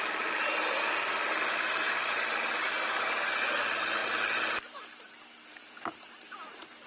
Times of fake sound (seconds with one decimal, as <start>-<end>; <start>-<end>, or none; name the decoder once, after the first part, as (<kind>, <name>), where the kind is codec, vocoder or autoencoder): none